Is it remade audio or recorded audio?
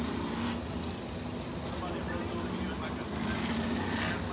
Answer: recorded